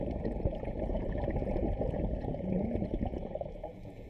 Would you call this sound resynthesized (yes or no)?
yes